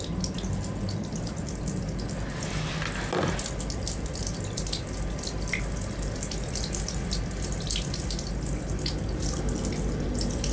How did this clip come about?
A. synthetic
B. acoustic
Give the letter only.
B